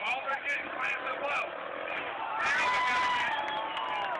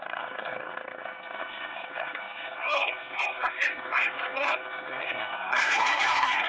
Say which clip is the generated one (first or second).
second